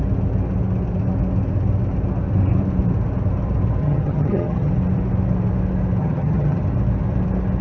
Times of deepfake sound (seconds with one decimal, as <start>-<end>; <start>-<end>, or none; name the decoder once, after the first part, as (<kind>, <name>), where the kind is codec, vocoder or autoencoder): 3.8-4.7 (vocoder, HiFi-GAN); 6.0-6.6